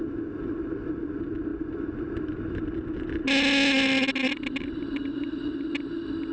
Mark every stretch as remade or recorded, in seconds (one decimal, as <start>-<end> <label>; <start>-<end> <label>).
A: 0.0-6.3 recorded